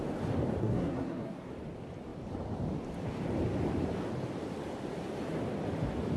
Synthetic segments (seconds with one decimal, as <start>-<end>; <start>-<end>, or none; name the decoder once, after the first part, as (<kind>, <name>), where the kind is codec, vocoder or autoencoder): 0.6-1.5 (codec, SNAC)